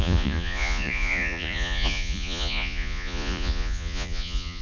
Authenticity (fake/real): fake